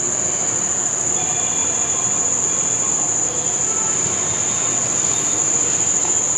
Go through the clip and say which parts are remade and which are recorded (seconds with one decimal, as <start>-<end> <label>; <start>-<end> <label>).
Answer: 0.0-6.4 recorded